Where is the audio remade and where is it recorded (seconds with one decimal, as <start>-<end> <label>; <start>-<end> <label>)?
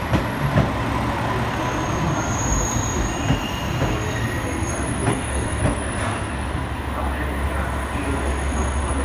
0.0-5.1 recorded; 5.1-5.6 remade; 5.6-9.0 recorded